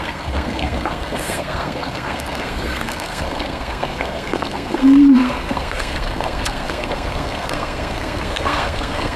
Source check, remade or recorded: remade